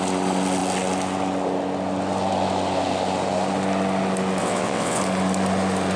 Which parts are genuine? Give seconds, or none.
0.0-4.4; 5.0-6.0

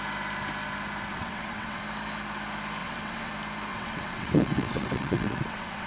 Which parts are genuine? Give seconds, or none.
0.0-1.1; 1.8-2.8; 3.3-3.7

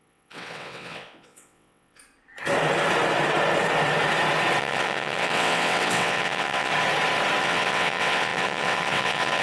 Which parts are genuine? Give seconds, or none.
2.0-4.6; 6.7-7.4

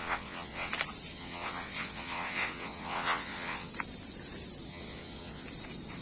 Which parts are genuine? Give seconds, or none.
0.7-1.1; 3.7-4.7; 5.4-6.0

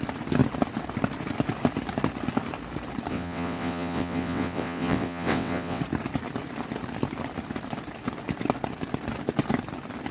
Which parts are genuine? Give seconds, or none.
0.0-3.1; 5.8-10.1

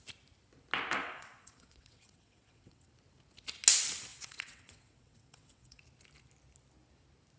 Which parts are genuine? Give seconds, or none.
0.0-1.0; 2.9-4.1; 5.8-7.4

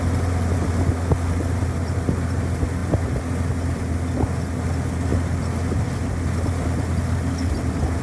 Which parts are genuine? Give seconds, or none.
0.0-8.0

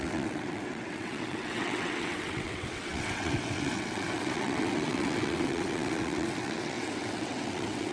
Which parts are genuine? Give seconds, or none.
none